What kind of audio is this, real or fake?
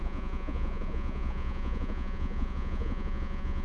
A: fake